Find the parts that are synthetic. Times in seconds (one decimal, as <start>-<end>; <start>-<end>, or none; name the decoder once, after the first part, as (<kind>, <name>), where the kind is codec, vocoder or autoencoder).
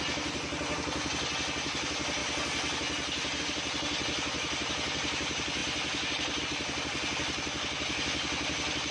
none